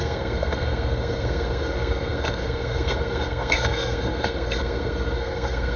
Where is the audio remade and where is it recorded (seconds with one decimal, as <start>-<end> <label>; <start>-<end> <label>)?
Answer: 0.0-5.8 remade